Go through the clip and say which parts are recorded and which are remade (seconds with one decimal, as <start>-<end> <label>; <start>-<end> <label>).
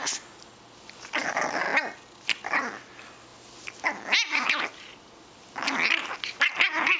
0.0-7.0 recorded